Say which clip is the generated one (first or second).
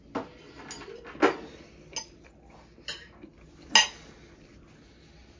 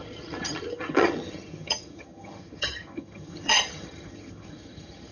second